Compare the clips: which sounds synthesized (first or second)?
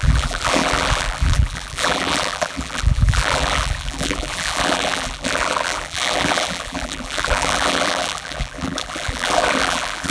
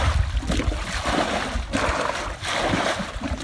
first